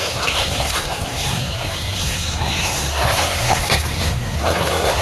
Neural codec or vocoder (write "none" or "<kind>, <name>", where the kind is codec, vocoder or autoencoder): codec, SNAC